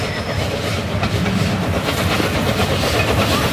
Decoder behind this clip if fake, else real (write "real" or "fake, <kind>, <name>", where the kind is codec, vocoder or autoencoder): real